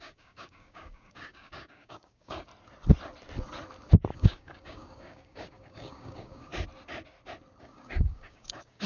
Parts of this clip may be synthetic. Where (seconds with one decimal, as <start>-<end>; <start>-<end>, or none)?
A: 0.0-2.5; 4.1-6.5; 7.6-8.9